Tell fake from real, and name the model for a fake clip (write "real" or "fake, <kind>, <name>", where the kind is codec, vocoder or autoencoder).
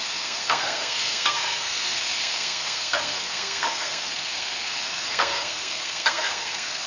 fake, codec, SNAC